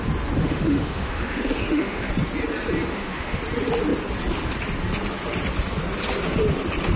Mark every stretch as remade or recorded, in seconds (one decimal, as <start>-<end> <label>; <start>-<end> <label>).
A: 0.0-0.4 recorded; 0.4-2.1 remade; 2.1-2.9 recorded; 2.9-3.4 remade; 3.4-7.0 recorded